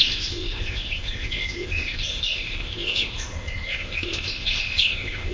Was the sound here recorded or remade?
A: remade